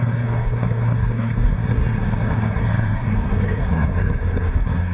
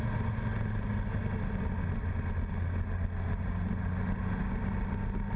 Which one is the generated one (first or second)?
first